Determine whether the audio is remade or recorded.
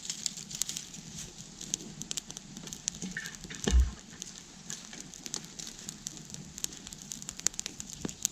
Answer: remade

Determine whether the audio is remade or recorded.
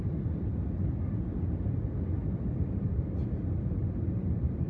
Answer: recorded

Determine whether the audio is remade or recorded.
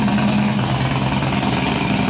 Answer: recorded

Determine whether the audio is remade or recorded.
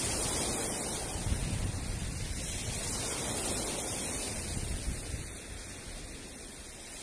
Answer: recorded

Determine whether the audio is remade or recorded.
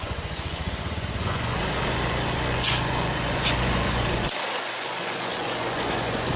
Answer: remade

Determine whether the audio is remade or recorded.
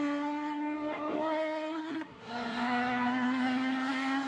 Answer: remade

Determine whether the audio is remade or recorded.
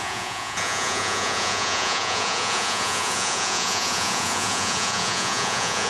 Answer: remade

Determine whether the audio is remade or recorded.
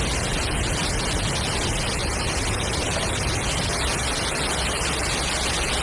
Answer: recorded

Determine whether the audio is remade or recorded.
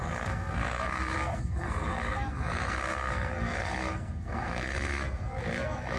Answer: remade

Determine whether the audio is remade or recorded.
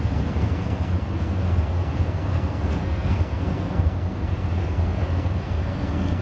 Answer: remade